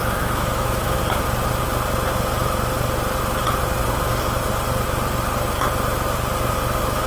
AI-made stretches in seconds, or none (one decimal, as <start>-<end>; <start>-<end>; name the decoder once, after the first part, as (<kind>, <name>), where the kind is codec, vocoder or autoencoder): 0.0-1.0 (autoencoder, DAC-VAE)